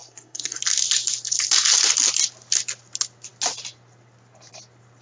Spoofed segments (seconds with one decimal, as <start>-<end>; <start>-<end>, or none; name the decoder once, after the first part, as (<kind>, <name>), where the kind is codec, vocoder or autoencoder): 0.0-0.6 (codec, SNAC)